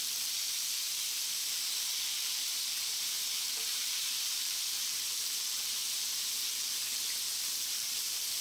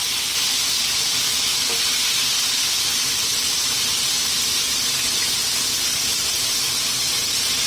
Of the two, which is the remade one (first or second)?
first